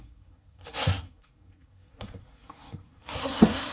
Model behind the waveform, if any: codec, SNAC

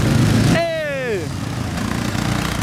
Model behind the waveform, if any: none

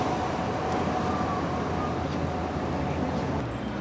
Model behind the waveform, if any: none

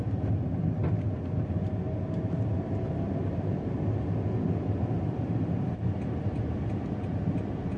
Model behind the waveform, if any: none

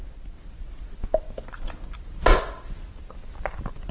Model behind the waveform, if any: none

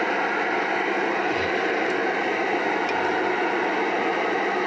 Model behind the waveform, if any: none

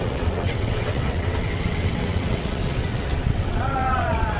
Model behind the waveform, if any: vocoder, WaveNeXt